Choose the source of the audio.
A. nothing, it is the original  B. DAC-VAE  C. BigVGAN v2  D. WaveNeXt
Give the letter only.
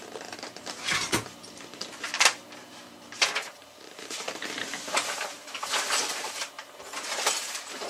C